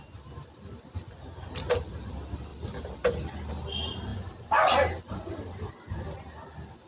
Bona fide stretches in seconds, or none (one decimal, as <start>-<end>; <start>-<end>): 0.0-6.9